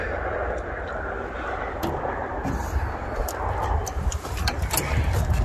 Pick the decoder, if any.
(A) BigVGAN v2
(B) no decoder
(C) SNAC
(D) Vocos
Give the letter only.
B